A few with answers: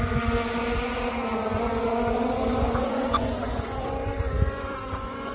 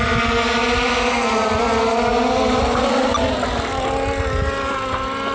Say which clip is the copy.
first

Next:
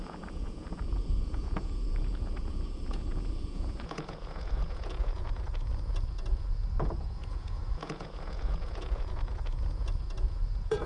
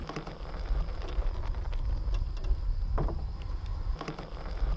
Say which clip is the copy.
first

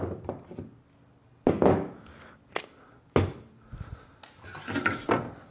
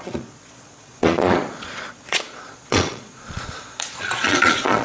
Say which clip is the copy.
second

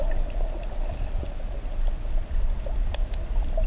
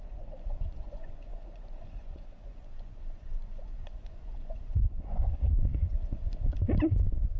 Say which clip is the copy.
second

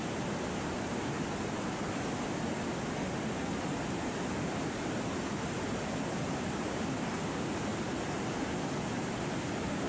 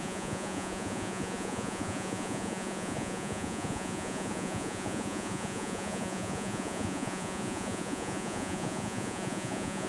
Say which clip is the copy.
second